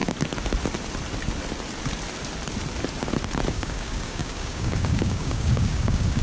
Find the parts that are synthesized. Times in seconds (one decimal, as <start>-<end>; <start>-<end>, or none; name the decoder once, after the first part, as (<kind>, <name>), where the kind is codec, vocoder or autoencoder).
3.5-6.2 (codec, DAC)